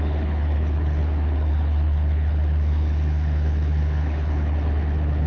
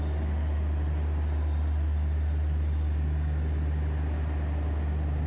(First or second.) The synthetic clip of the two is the first